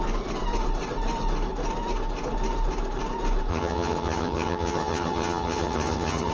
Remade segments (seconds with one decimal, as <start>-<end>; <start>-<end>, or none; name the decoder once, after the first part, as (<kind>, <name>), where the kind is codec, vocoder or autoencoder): 3.5-6.3 (vocoder, HiFi-GAN)